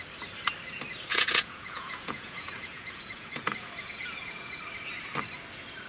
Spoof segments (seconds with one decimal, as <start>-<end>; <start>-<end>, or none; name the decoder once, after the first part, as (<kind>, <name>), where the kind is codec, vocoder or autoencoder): 1.1-4.6 (vocoder, Vocos)